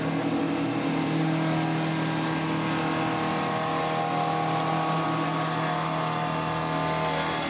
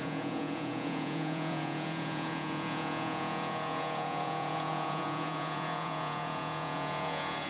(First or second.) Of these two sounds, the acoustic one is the first